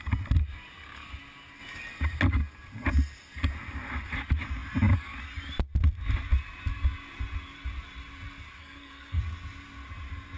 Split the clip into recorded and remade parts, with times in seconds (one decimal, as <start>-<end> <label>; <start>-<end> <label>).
0.0-8.6 recorded; 8.6-9.2 remade; 9.2-10.4 recorded